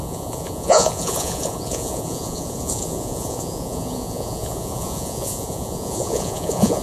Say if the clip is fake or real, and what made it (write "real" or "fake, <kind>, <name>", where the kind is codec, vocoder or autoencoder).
fake, vocoder, Vocos